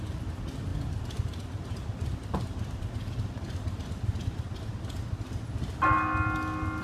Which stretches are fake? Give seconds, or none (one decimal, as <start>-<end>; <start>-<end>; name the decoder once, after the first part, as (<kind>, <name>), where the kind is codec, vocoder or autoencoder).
0.7-4.8 (vocoder, BigVGAN v2)